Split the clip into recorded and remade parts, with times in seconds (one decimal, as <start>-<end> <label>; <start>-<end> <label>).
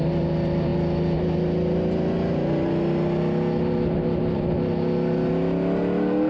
0.0-6.3 recorded